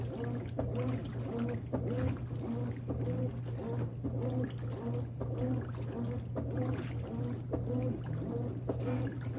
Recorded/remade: recorded